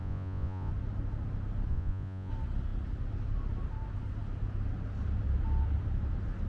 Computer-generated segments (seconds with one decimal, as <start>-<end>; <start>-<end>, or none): 0.0-0.7; 1.7-2.3